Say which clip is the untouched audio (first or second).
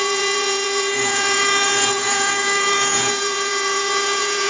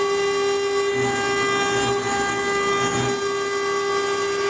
second